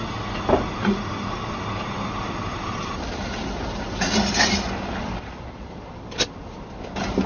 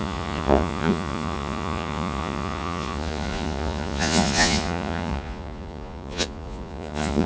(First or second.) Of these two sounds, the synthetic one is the second